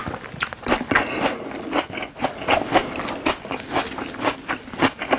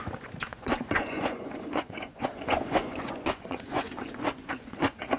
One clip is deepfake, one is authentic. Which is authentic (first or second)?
first